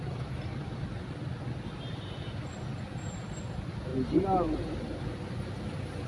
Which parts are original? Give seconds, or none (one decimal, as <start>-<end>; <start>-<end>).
1.2-1.8; 3.9-6.1